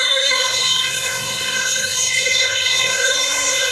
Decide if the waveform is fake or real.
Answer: fake